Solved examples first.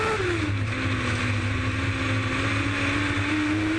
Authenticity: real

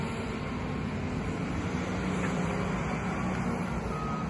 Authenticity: real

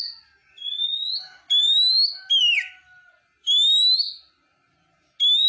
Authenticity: real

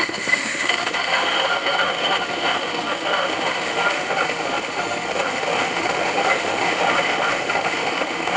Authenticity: fake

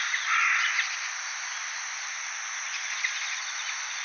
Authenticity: real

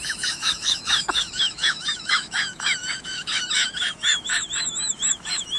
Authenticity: fake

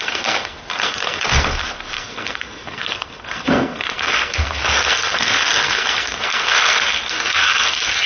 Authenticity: fake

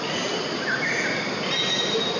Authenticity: real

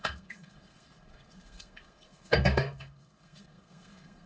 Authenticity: fake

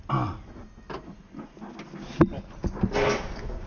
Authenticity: real